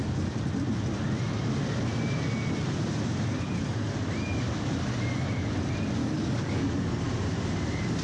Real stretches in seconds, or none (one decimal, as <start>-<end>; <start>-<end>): 0.0-6.0; 7.0-8.0